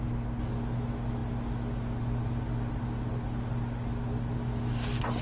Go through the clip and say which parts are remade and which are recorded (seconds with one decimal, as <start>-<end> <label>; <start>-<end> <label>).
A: 0.0-5.2 recorded